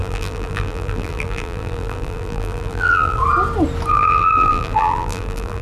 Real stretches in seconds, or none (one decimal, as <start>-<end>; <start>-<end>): 3.2-3.9